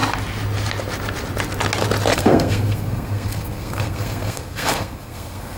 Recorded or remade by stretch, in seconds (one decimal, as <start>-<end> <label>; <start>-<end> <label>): 0.0-2.1 recorded; 2.1-5.6 remade